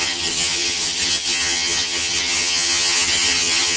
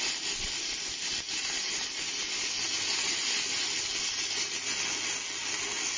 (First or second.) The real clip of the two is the second